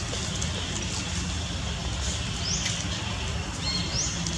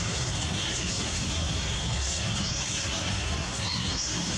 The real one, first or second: first